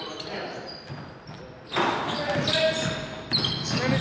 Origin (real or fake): real